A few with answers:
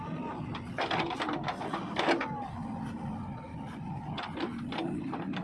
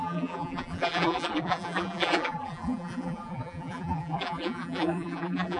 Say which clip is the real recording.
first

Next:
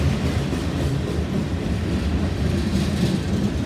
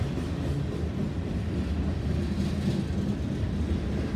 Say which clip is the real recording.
second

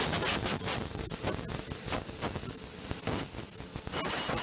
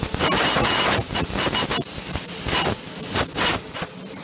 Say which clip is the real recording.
first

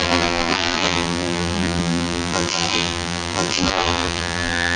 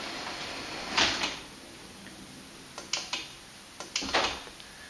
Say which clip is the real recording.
second